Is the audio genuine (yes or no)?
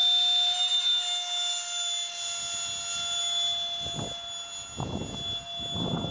yes